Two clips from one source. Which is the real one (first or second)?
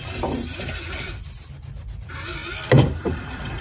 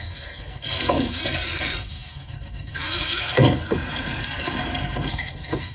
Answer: first